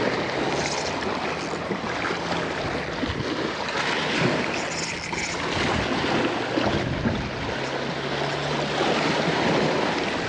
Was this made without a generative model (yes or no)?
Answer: yes